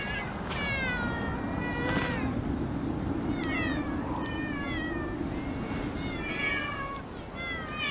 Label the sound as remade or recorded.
recorded